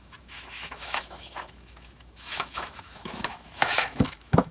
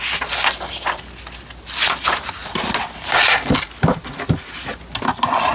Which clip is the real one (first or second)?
second